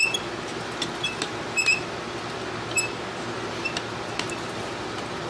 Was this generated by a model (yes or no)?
no